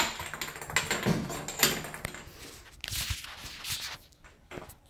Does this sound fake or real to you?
real